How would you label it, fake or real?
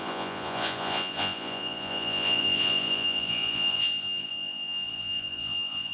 fake